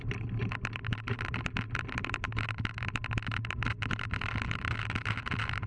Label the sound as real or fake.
real